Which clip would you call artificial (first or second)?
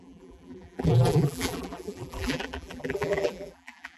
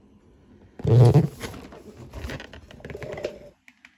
first